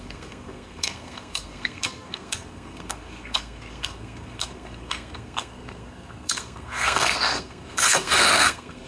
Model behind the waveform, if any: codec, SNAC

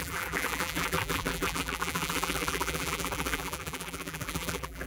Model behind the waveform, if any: vocoder, BigVGAN v2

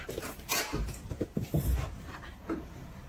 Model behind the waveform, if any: vocoder, BigVGAN v2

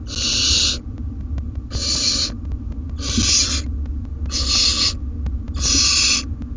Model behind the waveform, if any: none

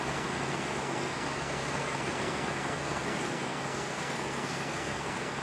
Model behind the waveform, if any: codec, SNAC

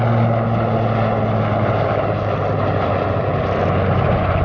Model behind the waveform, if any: none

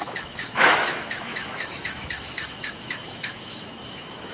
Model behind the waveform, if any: autoencoder, DAC-VAE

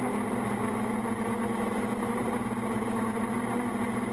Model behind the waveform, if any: none